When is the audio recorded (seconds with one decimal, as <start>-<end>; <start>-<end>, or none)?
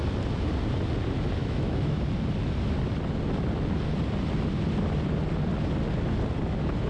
0.0-1.4; 2.0-6.9